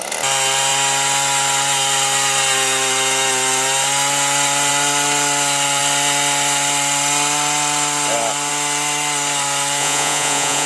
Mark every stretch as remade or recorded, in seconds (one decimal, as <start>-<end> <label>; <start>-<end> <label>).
0.0-9.8 recorded; 9.8-10.7 remade